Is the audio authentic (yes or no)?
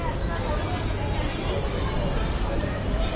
yes